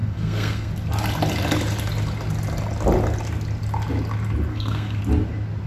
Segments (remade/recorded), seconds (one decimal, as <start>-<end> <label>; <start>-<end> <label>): 0.0-0.7 remade; 0.7-4.5 recorded; 4.5-5.0 remade; 5.0-5.7 recorded